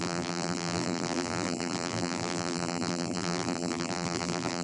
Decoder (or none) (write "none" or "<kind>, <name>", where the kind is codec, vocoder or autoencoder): vocoder, BigVGAN v2